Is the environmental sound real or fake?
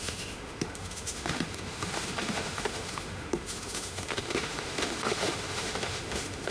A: fake